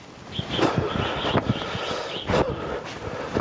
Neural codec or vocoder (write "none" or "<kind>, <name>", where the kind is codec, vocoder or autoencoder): none